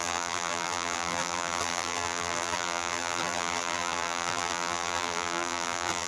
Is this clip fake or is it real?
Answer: fake